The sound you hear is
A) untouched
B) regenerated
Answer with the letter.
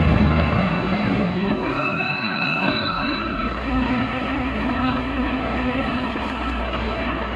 B